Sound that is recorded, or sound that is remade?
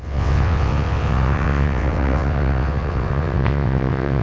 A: remade